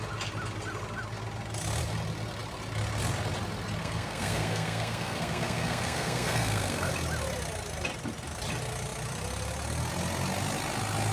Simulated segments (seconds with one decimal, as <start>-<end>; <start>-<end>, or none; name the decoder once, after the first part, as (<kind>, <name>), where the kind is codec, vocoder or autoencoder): 3.8-6.9 (codec, SNAC)